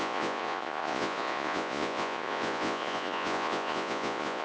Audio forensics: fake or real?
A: fake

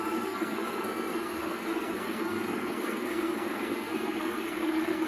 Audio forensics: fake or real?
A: fake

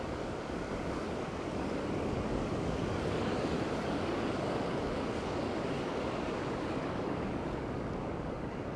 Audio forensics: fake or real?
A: fake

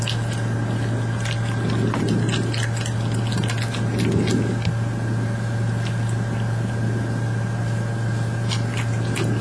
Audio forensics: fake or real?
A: real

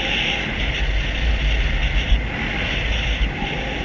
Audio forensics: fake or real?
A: real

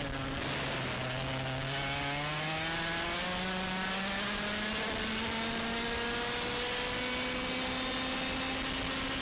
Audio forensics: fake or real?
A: real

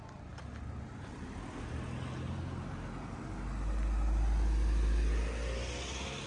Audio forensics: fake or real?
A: real